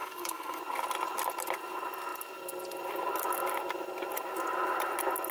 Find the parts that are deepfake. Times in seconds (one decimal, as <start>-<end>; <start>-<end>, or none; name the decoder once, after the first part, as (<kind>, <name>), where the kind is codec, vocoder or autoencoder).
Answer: 0.0-0.6 (codec, DAC)